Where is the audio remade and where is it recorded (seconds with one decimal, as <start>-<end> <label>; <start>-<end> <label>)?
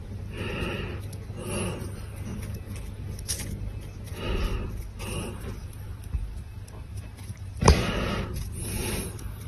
0.0-4.1 recorded; 4.1-4.5 remade; 4.5-5.4 recorded; 5.4-9.5 remade